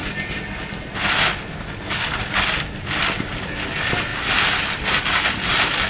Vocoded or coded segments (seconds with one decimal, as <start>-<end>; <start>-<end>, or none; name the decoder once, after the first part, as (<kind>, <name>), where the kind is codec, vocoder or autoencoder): none